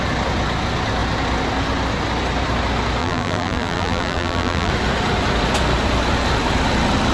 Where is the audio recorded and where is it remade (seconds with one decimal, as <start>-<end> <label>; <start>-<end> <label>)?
0.0-3.0 recorded; 3.0-4.7 remade; 4.7-7.1 recorded